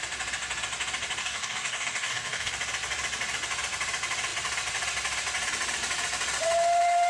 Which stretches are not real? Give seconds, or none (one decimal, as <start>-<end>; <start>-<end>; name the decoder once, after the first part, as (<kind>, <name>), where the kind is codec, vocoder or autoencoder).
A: 1.2-2.5 (codec, DAC)